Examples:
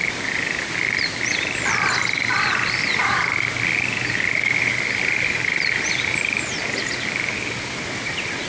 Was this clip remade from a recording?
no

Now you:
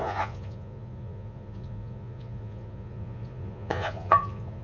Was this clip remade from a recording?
yes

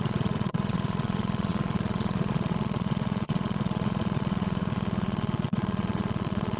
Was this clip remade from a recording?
yes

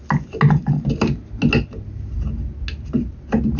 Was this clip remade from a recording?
no